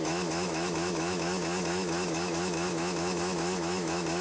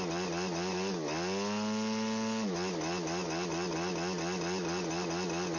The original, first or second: second